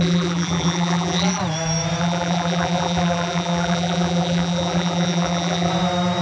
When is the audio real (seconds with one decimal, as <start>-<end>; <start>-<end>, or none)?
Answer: 1.4-2.0; 5.7-6.2